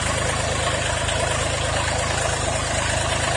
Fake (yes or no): no